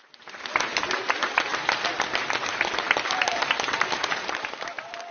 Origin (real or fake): fake